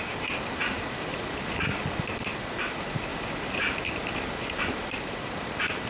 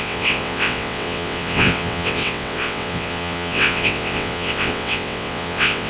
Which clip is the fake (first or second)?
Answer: second